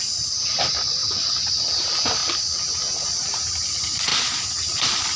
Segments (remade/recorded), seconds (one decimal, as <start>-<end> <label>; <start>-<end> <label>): 0.0-5.2 recorded